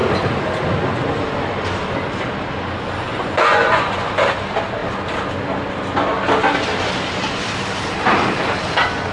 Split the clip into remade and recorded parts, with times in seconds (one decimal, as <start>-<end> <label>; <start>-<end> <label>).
0.0-3.1 recorded; 3.1-4.1 remade; 4.1-9.1 recorded